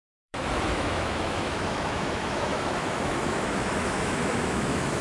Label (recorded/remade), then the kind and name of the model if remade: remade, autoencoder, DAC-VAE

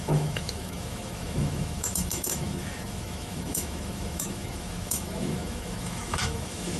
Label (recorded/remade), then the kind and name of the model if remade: remade, autoencoder, DAC-VAE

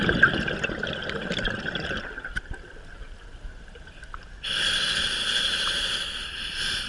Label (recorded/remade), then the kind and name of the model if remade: recorded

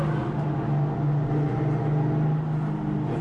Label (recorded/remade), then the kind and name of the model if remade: recorded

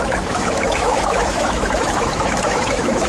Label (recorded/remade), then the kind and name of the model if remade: remade, autoencoder, DAC-VAE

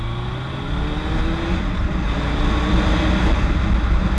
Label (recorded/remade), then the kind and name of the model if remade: recorded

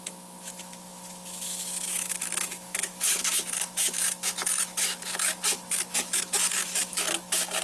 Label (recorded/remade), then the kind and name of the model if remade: remade, autoencoder, DAC-VAE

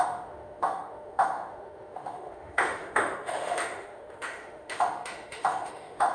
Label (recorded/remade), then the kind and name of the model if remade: remade, autoencoder, DAC-VAE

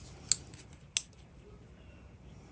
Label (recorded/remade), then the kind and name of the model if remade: recorded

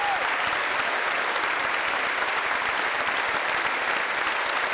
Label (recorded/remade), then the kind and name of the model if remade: recorded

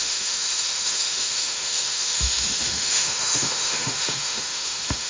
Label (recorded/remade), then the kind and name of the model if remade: remade, autoencoder, DAC-VAE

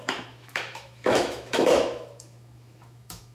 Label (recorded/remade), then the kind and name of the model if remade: remade, autoencoder, DAC-VAE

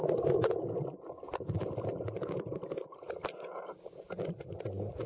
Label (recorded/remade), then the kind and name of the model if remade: recorded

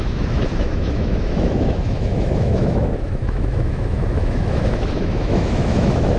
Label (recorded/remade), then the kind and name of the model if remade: remade, autoencoder, DAC-VAE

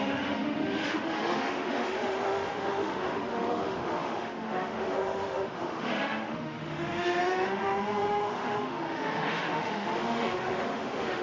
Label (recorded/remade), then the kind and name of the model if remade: remade, autoencoder, DAC-VAE